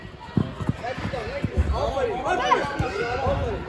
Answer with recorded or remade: recorded